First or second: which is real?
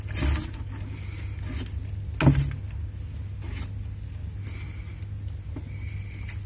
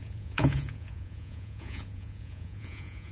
first